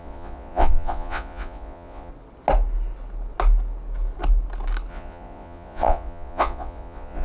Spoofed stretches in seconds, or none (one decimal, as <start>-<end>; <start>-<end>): 0.0-2.1; 4.9-7.2